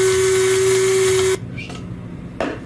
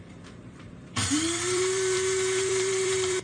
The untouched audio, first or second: first